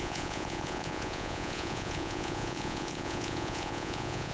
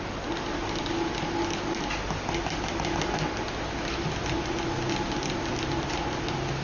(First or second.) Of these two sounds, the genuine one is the second